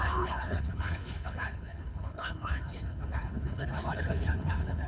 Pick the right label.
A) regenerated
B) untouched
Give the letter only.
A